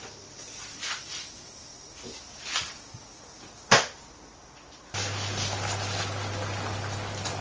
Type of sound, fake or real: real